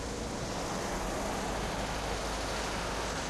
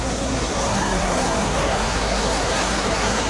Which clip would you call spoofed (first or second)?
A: second